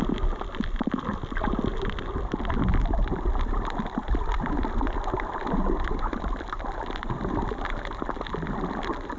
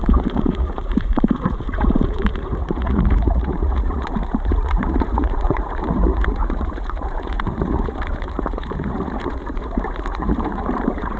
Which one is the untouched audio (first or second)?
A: first